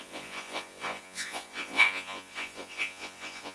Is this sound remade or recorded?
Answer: remade